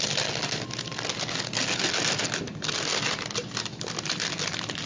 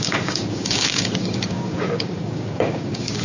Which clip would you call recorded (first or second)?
first